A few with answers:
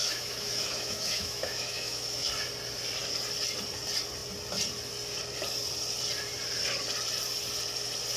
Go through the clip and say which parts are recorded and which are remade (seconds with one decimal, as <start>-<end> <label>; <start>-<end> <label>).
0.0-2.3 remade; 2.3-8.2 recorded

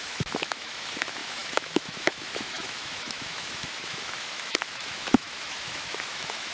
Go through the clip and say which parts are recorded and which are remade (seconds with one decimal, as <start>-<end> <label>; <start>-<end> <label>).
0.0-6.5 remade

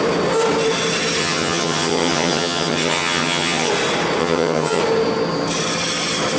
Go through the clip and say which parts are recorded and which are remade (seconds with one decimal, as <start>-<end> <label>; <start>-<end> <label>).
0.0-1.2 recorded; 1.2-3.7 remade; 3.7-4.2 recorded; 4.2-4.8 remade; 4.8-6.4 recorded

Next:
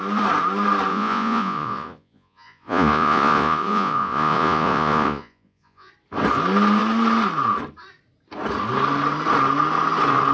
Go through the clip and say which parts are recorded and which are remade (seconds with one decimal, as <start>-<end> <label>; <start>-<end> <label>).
0.0-0.9 recorded; 0.9-5.9 remade; 5.9-10.3 recorded

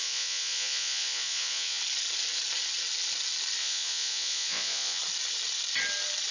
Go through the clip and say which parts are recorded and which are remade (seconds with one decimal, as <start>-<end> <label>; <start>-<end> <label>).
0.0-1.8 remade; 1.8-3.6 recorded; 3.6-5.0 remade; 5.0-6.3 recorded

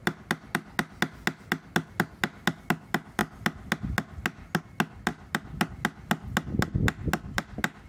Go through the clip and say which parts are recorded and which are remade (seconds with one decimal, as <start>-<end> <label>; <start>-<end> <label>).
0.0-7.9 recorded